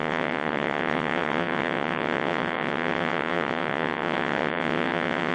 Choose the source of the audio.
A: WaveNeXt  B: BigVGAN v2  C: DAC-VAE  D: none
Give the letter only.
A